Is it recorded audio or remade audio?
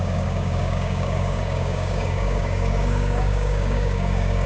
remade